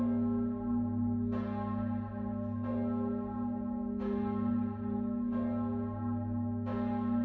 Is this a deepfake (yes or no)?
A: no